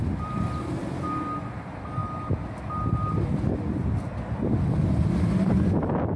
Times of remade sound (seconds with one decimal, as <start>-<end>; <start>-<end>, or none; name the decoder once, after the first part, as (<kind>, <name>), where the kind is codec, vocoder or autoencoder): 0.0-0.8 (vocoder, BigVGAN v2); 1.5-2.0; 5.5-6.2